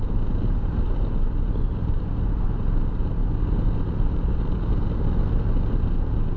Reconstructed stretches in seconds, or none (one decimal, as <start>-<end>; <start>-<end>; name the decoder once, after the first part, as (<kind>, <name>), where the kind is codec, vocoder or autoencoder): none

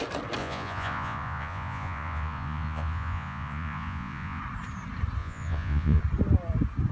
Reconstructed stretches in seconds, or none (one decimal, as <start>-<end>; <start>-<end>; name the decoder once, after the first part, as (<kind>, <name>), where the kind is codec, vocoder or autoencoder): 0.4-4.4 (vocoder, Vocos); 5.2-6.0